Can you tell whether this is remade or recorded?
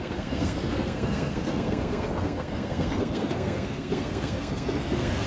remade